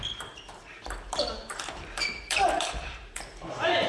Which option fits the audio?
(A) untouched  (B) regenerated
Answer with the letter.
B